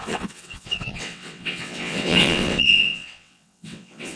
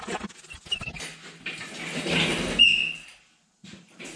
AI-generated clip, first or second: first